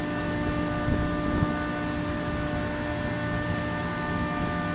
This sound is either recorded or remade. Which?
recorded